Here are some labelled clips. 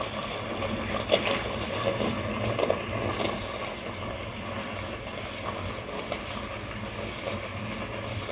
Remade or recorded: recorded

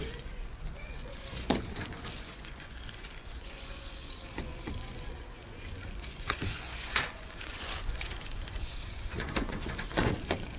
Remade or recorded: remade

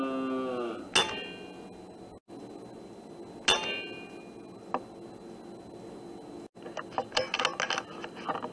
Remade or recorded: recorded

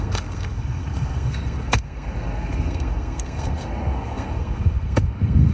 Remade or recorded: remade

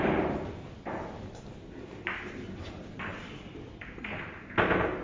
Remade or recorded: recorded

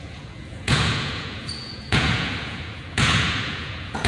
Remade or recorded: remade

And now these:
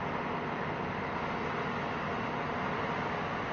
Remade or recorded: recorded